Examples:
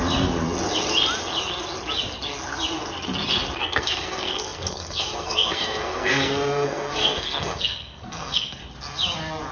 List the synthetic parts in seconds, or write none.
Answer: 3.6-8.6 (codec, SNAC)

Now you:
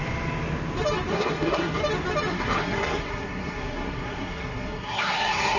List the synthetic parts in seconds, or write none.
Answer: 1.1-1.8 (codec, SNAC); 2.3-5.6

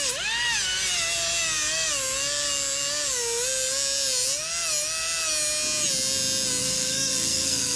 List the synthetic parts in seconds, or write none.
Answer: 6.6-7.8 (codec, SNAC)

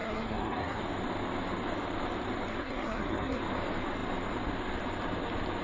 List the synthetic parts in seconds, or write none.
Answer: 0.0-0.8 (codec, SNAC); 2.5-3.4